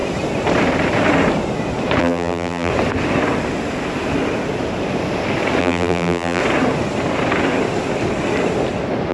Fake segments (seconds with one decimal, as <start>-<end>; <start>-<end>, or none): 2.0-2.7; 5.6-6.4